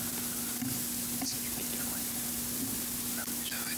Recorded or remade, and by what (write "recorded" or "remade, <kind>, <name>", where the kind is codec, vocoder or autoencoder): recorded